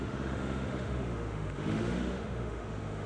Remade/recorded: remade